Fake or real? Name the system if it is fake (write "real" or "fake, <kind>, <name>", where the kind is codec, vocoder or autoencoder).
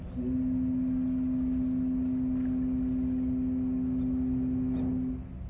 real